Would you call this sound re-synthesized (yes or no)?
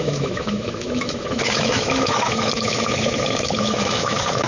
yes